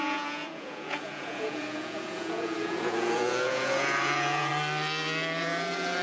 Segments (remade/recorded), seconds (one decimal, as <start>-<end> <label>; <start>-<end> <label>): 0.0-4.5 remade; 4.5-5.4 recorded; 5.4-6.0 remade